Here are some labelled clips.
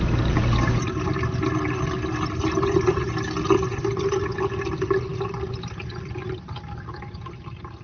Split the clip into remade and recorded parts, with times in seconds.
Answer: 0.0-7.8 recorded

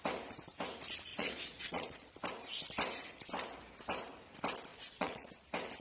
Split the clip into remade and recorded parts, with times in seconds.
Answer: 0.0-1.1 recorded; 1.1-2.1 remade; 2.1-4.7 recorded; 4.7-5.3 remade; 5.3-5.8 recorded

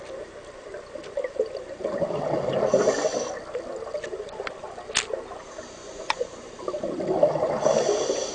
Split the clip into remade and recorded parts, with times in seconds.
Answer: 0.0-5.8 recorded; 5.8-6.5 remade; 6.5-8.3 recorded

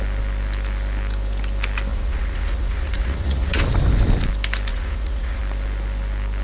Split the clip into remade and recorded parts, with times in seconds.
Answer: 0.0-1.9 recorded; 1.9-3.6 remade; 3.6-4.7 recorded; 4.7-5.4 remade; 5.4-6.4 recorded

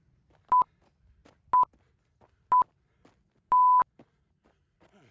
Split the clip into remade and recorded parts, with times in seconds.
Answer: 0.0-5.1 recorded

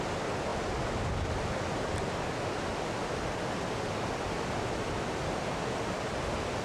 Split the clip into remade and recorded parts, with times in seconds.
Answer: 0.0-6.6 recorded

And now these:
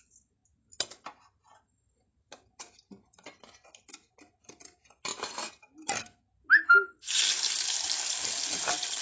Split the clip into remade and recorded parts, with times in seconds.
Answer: 0.0-9.0 recorded